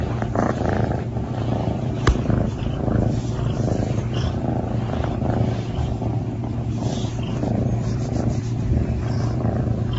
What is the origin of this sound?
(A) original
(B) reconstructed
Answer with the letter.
B